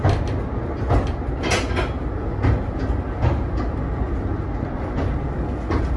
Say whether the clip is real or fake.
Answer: real